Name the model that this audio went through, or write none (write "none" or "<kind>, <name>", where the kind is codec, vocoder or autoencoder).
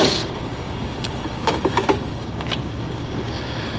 codec, DAC